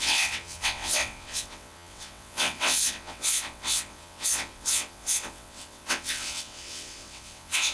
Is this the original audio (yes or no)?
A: no